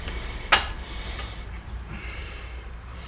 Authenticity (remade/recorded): remade